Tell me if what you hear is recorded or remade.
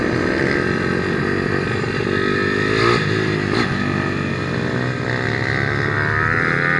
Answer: recorded